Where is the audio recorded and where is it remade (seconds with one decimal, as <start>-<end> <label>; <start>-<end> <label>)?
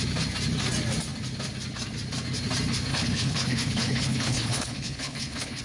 0.0-2.9 recorded; 2.9-5.6 remade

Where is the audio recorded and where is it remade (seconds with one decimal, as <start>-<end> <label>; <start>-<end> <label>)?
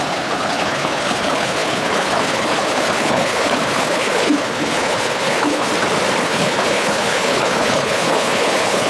0.0-5.7 remade; 5.7-6.2 recorded; 6.2-8.9 remade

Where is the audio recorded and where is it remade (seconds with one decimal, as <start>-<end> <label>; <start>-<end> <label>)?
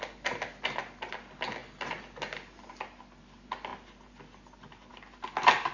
0.0-5.7 recorded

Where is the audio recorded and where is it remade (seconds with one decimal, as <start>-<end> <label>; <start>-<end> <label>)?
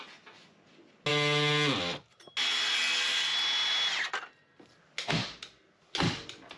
0.0-6.6 recorded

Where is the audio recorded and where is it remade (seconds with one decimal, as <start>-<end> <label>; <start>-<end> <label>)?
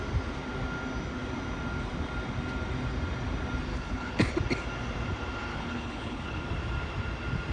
0.0-3.7 recorded; 3.7-4.3 remade; 4.3-5.5 recorded; 5.5-6.4 remade; 6.4-7.5 recorded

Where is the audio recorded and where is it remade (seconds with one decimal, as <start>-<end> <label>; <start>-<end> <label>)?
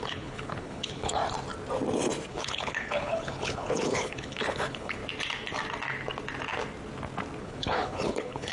0.0-1.2 remade; 1.2-2.3 recorded; 2.3-5.0 remade; 5.0-7.4 recorded; 7.4-8.5 remade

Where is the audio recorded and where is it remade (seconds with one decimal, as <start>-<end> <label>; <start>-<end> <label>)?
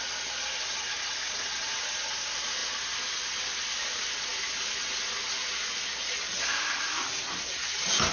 0.0-8.1 recorded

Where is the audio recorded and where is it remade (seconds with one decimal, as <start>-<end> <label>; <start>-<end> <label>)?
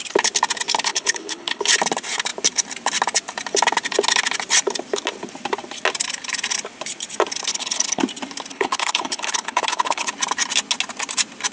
0.0-0.9 recorded; 0.9-1.6 remade; 1.6-7.5 recorded; 7.5-8.0 remade; 8.0-8.5 recorded; 8.5-10.1 remade; 10.1-11.5 recorded